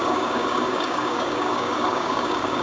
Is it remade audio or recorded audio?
remade